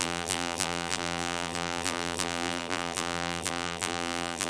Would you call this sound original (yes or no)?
no